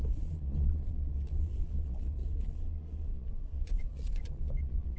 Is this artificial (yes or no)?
yes